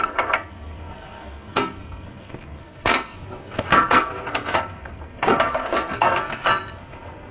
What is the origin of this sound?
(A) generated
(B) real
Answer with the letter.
A